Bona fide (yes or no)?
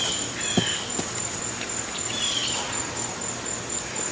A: yes